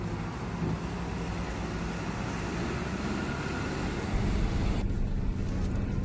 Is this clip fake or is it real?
real